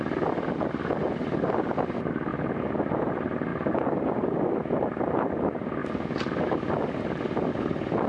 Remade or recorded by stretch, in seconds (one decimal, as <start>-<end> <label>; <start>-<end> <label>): 0.0-8.1 recorded